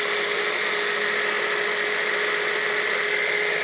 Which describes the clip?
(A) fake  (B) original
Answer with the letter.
B